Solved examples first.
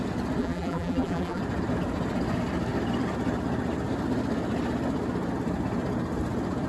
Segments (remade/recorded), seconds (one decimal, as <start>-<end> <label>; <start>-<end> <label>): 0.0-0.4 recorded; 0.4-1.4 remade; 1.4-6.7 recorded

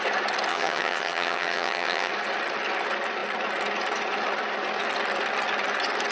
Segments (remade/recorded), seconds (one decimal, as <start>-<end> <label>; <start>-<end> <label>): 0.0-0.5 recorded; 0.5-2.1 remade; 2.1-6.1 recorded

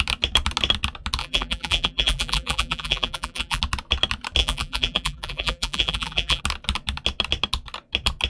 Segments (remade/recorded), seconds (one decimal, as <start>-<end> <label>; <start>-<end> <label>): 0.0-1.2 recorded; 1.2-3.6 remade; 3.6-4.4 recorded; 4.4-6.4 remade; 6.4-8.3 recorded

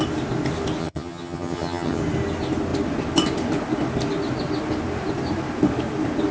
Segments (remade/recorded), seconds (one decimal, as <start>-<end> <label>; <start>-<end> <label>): 0.0-0.8 recorded; 0.8-2.0 remade; 2.0-6.3 recorded

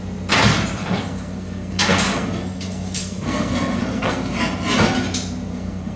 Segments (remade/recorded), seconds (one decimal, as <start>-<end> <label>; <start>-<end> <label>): 0.0-0.8 recorded; 0.8-4.4 remade; 4.4-5.5 recorded; 5.5-6.0 remade

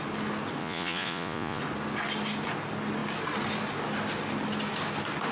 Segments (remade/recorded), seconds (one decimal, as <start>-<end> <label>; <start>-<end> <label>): 0.0-0.6 recorded; 0.6-1.6 remade; 1.6-5.3 recorded

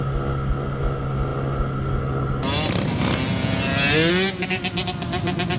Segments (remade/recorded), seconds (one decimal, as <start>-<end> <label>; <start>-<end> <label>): 0.0-5.6 recorded

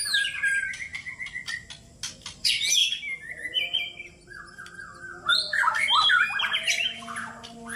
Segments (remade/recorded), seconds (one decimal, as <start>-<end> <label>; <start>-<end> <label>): 0.0-7.8 recorded